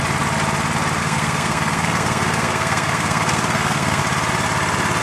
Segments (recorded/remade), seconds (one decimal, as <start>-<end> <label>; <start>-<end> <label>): 0.0-1.0 recorded; 1.0-4.0 remade; 4.0-5.0 recorded